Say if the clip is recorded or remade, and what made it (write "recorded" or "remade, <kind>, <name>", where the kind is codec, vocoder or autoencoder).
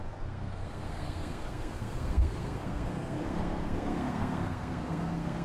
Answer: remade, codec, SNAC